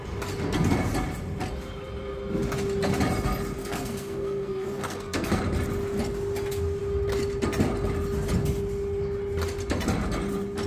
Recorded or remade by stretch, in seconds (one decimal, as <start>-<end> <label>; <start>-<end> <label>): 0.0-3.6 recorded; 3.6-5.4 remade; 5.4-10.7 recorded